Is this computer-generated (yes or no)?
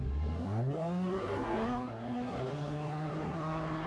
yes